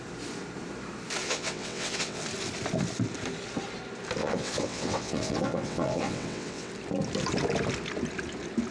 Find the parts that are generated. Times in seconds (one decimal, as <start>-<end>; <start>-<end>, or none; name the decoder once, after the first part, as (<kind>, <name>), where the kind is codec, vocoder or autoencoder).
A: 1.2-2.2 (vocoder, WaveNeXt); 4.2-6.7

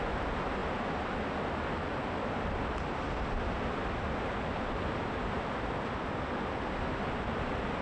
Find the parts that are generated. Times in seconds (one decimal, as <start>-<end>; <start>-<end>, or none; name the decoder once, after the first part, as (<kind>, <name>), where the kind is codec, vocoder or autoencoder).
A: none

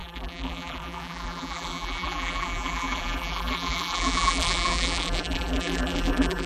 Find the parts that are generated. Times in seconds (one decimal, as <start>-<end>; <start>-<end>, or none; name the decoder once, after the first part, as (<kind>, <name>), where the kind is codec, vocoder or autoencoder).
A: 0.0-6.5 (vocoder, BigVGAN v2)

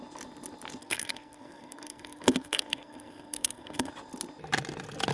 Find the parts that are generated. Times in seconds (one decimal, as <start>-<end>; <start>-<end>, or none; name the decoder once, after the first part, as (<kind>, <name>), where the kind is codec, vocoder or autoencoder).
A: 0.8-3.9 (codec, SNAC)